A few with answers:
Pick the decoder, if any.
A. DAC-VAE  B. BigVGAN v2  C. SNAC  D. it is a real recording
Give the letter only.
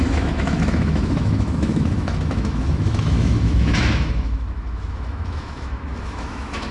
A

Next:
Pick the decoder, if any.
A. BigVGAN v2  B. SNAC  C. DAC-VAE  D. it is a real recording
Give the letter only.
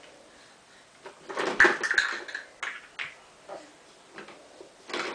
D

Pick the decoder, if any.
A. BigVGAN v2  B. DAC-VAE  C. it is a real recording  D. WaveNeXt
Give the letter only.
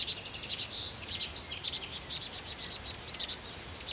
C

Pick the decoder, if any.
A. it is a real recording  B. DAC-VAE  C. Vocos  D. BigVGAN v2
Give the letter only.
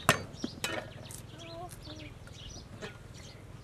A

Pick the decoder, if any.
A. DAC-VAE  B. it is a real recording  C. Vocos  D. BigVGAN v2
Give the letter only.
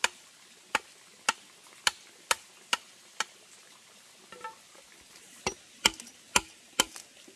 B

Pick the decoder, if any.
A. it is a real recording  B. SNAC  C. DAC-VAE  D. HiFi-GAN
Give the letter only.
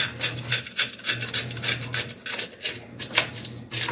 A